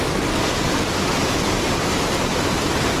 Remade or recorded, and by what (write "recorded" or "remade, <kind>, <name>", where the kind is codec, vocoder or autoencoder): remade, vocoder, BigVGAN v2